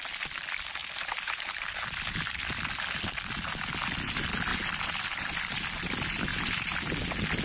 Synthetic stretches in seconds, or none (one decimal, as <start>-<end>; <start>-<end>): 0.8-1.6; 6.3-6.9